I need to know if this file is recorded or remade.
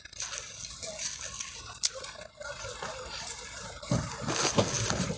recorded